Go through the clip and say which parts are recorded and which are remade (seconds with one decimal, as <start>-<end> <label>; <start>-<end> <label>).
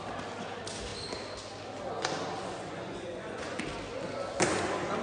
0.0-2.4 recorded; 2.4-3.6 remade; 3.6-5.0 recorded